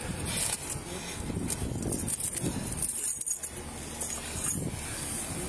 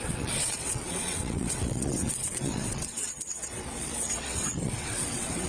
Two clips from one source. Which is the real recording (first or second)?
first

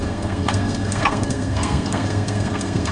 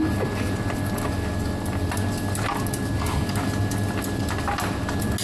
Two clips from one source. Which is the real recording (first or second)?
second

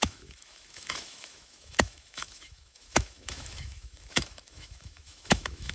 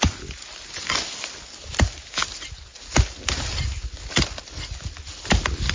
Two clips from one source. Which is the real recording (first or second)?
second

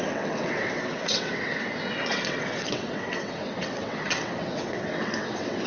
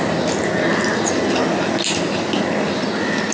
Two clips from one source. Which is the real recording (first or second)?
second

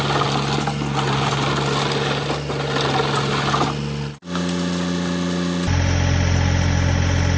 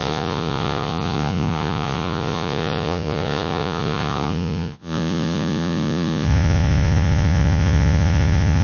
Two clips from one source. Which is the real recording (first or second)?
first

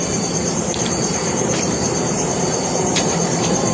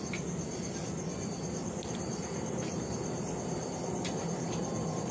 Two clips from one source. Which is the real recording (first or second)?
second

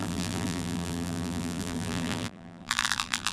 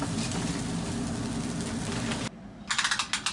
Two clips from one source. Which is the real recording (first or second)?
second